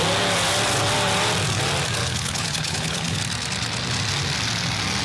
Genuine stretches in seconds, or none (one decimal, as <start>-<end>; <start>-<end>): 0.0-2.0; 3.2-5.0

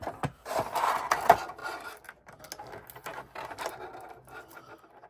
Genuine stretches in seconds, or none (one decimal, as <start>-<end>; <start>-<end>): 0.0-5.1

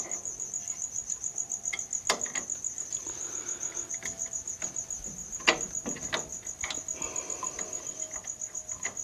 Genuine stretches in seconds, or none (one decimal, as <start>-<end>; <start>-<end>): 0.0-9.0

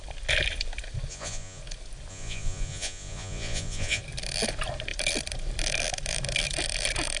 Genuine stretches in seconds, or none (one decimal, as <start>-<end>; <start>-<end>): 0.0-1.1; 1.6-2.1; 4.0-7.2